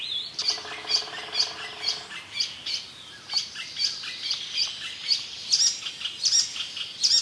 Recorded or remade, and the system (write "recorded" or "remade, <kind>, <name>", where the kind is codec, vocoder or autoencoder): recorded